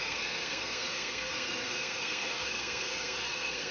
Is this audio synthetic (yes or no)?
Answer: yes